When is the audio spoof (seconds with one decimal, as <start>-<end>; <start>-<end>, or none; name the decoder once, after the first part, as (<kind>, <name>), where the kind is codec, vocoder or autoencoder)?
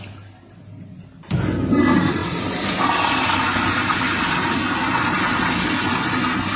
none